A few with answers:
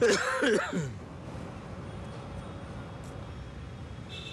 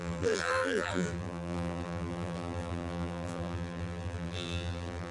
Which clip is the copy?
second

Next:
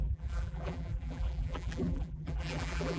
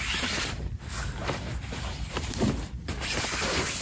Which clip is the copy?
first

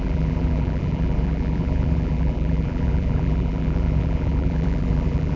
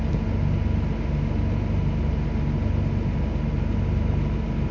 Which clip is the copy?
first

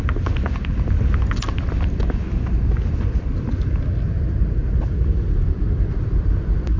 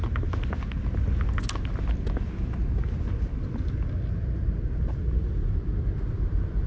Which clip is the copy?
first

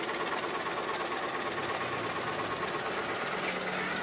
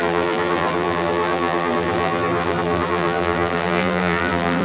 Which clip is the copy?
second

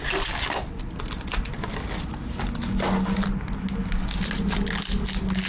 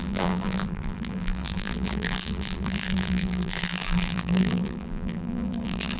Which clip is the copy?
second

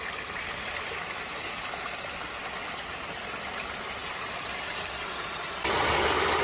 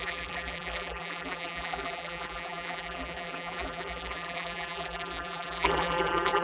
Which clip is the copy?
second